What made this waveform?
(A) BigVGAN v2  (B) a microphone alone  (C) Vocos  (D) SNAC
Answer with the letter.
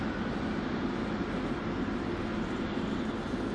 B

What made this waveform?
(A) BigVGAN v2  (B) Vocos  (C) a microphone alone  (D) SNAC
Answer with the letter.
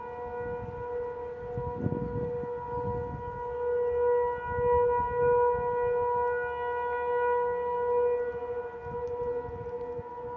C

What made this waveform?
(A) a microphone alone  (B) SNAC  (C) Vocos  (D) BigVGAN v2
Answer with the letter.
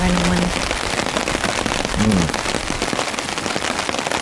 A